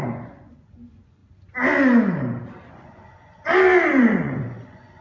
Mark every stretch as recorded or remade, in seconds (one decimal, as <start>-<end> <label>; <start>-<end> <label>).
0.0-1.2 remade; 1.2-2.7 recorded; 2.7-3.5 remade; 3.5-4.0 recorded; 4.0-5.0 remade